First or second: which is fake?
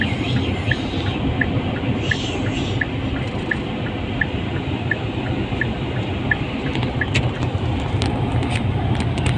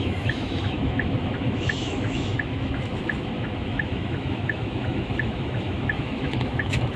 second